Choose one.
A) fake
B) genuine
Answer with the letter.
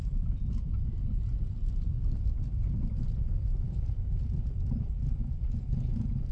B